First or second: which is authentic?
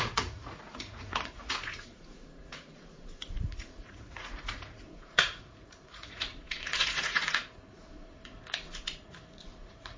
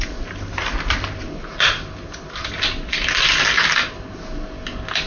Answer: second